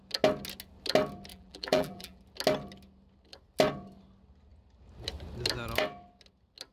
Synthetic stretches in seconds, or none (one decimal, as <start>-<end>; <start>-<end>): 1.3-2.2